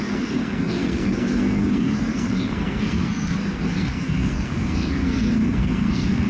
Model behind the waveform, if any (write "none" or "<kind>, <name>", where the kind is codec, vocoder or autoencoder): codec, SNAC